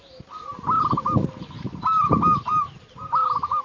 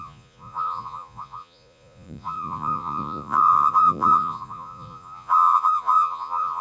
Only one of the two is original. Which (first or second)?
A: first